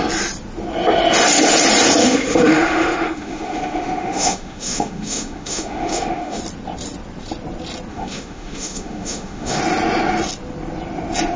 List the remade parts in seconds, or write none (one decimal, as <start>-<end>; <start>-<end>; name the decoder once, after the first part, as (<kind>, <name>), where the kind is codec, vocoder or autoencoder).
2.0-6.4 (autoencoder, DAC-VAE); 7.9-9.6